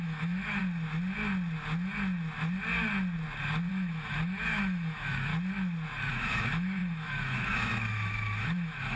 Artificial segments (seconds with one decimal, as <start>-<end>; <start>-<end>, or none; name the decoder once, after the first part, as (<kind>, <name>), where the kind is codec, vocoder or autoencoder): 0.0-0.6 (autoencoder, DAC-VAE); 3.7-5.3; 6.1-9.0